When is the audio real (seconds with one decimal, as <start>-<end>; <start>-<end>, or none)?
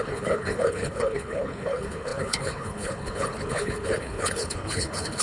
none